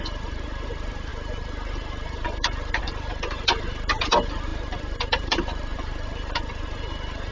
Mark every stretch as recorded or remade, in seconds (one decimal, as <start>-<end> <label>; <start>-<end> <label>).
0.0-7.3 remade